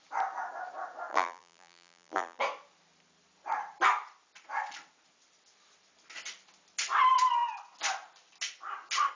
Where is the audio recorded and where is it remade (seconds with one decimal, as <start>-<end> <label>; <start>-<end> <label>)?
0.0-1.1 recorded; 1.1-2.4 remade; 2.4-9.1 recorded